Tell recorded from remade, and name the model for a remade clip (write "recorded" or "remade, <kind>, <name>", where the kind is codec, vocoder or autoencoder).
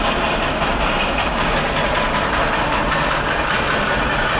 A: recorded